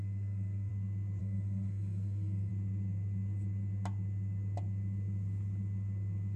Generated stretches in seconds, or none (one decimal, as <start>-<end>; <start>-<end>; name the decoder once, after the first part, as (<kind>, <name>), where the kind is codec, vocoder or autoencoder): 0.0-0.7 (codec, SNAC); 1.2-2.5